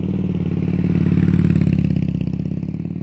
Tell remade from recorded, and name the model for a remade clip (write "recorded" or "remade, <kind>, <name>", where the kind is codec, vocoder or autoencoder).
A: recorded